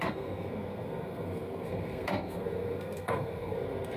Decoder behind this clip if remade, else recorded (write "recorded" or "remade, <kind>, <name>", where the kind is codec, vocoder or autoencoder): remade, codec, SNAC